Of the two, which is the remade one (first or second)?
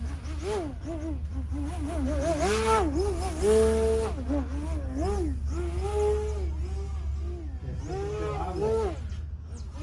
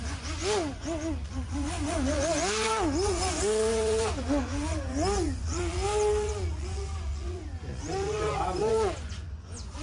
second